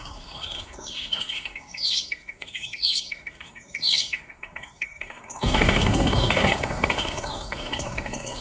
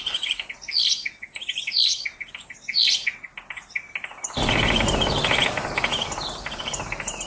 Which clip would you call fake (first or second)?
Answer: first